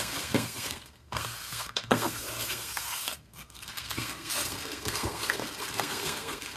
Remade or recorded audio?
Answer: remade